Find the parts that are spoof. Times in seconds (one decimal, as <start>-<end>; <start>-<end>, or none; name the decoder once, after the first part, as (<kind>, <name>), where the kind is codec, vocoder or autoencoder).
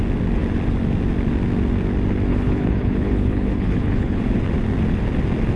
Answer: 2.3-4.2 (codec, HILCodec)